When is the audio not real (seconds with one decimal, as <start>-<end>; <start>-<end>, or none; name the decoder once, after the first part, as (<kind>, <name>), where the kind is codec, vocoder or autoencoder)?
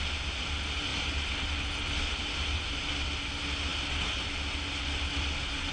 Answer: none